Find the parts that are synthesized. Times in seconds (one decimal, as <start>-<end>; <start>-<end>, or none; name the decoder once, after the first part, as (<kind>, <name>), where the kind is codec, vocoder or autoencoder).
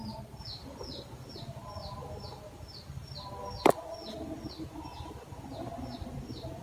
none